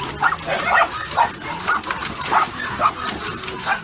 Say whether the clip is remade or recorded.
recorded